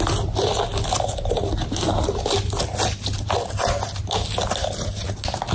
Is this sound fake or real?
real